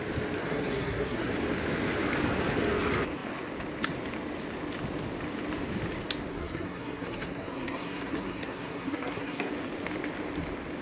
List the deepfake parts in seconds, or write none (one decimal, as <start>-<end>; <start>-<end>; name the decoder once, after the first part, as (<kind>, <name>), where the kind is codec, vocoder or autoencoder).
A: 0.4-1.3 (codec, SNAC); 6.3-9.5